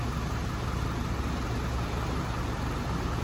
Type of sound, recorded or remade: recorded